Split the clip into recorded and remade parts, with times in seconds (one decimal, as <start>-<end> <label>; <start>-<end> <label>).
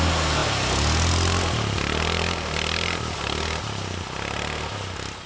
0.0-5.3 recorded